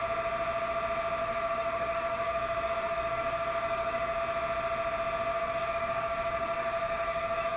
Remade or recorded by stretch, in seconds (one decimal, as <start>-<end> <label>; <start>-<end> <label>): 0.0-1.2 recorded; 1.2-4.2 remade; 4.2-5.3 recorded; 5.3-7.6 remade